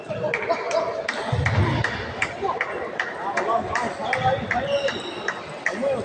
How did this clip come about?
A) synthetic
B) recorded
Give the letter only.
B